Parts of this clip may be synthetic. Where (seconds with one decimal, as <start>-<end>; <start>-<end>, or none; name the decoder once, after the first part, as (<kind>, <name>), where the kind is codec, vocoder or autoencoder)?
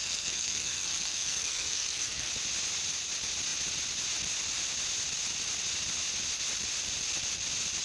0.0-2.3 (codec, SNAC)